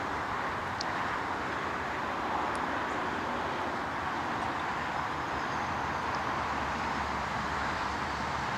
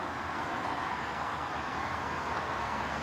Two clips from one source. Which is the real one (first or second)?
first